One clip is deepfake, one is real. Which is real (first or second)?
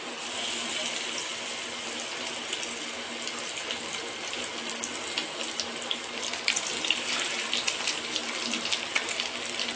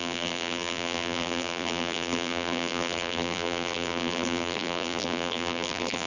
first